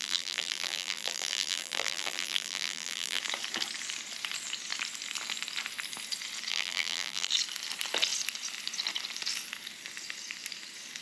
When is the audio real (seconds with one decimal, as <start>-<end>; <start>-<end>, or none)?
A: 3.2-6.5; 7.3-11.0